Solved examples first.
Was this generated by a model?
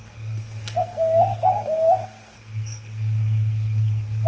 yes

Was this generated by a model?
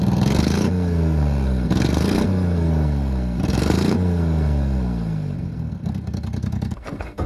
yes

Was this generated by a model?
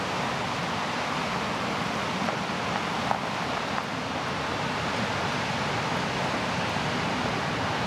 no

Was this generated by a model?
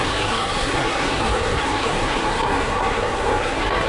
yes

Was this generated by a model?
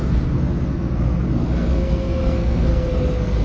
yes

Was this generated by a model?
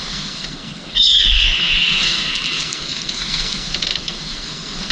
yes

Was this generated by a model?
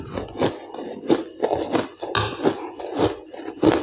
no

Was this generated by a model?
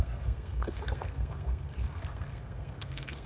yes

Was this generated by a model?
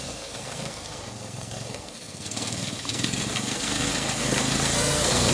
yes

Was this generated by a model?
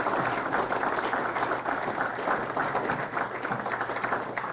no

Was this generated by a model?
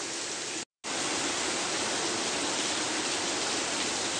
no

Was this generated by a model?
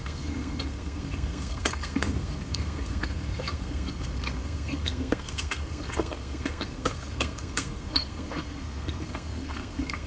yes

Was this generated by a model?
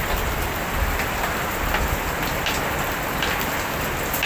no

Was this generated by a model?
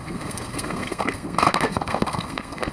yes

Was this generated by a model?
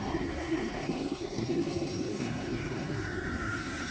yes